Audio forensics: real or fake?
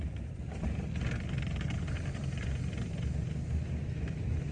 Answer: real